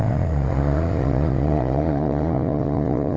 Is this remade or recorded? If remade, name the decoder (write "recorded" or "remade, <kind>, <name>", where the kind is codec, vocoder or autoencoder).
remade, vocoder, Vocos